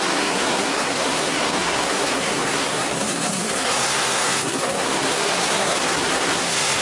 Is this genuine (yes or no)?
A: no